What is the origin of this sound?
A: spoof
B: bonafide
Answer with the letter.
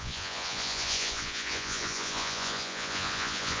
A